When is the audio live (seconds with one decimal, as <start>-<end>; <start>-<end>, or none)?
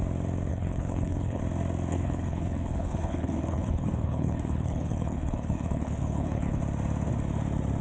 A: 0.0-0.5; 1.4-1.9; 6.6-7.8